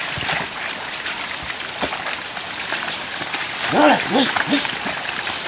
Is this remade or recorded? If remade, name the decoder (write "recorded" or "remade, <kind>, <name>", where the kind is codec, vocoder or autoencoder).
remade, vocoder, BigVGAN v2